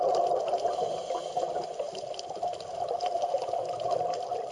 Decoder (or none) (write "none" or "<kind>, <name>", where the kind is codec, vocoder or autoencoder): none